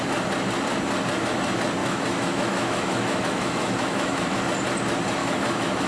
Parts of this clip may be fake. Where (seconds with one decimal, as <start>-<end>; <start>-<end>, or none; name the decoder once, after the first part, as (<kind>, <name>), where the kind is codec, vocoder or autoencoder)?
1.8-4.4 (autoencoder, DAC-VAE); 5.2-5.9